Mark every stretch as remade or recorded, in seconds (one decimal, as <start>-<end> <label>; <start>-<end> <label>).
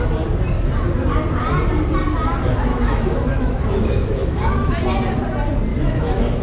0.0-2.7 recorded; 2.7-4.7 remade; 4.7-5.7 recorded; 5.7-6.4 remade